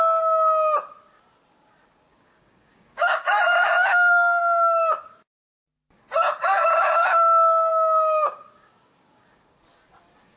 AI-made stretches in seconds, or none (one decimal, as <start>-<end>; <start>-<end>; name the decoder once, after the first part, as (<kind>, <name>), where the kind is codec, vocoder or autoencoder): 2.1-5.3 (codec, DAC); 6.4-9.6

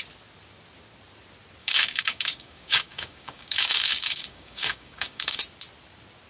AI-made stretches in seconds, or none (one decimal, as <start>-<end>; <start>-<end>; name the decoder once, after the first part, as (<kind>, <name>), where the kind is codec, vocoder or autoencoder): 1.6-5.4 (codec, DAC)

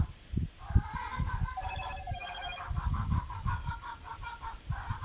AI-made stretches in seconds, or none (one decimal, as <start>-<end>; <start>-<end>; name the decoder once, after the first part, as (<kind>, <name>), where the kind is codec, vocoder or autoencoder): 1.1-4.1 (codec, DAC)

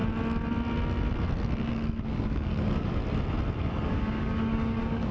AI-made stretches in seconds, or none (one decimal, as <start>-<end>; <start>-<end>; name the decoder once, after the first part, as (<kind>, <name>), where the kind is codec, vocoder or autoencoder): 1.7-3.0 (codec, DAC); 3.6-5.1

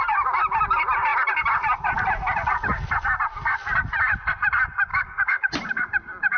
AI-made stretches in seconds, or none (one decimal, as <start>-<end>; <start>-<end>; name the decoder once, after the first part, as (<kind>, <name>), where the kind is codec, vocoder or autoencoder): 4.9-5.5 (codec, DAC)

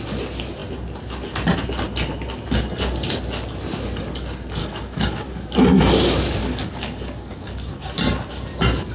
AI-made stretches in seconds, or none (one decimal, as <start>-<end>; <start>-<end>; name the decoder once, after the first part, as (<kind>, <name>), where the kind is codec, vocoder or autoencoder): 4.6-5.5 (codec, DAC); 6.4-7.9

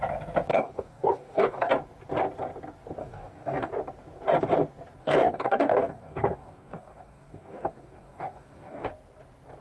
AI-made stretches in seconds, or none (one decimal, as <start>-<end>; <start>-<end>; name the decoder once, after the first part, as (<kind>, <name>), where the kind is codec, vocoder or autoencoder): 0.5-1.7 (codec, DAC); 3.0-3.7; 5.0-8.9